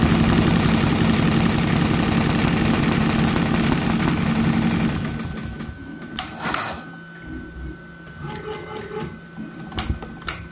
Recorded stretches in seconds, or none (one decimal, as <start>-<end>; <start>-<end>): 0.0-5.4; 6.1-10.5